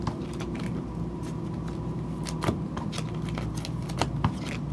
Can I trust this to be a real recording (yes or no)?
yes